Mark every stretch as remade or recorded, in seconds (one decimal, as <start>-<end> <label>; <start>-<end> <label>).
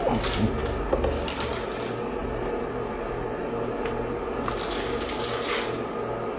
0.0-6.4 recorded